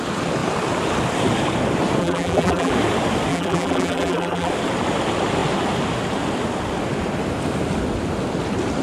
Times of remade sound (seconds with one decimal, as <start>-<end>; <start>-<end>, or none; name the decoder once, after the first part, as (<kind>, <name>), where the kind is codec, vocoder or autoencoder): 2.0-2.7 (vocoder, BigVGAN v2); 3.3-4.5